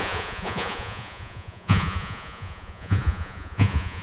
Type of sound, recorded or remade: remade